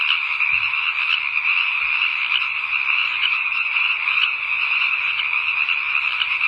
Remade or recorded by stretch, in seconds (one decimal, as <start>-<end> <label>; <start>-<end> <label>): 0.0-3.0 recorded; 3.0-5.2 remade; 5.2-6.5 recorded